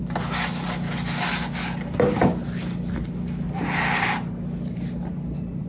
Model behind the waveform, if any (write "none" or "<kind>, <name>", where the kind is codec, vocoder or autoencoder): none